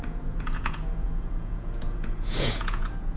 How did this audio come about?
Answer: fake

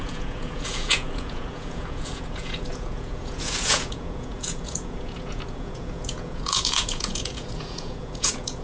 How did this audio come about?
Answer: fake